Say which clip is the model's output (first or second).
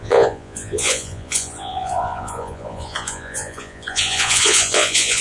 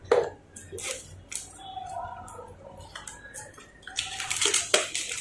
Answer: first